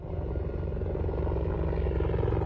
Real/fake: real